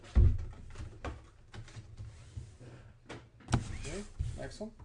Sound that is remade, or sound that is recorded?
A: recorded